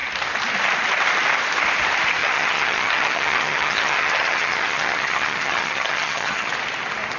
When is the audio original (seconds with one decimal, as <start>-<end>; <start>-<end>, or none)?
0.0-2.2; 6.5-7.2